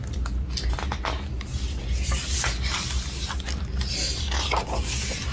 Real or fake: real